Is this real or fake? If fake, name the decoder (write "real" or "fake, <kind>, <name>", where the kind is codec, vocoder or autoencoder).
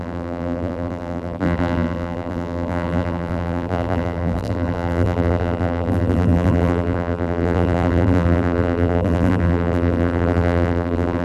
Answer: fake, vocoder, BigVGAN v2